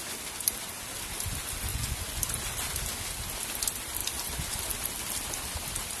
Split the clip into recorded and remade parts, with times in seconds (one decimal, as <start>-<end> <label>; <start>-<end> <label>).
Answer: 0.0-1.7 recorded; 1.7-2.2 remade; 2.2-6.0 recorded